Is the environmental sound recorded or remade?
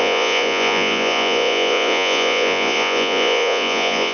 remade